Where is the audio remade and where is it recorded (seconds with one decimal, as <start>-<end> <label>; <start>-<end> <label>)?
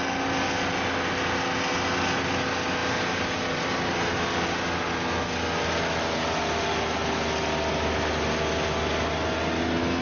0.0-10.0 recorded